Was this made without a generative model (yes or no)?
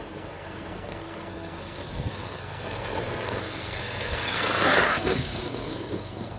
no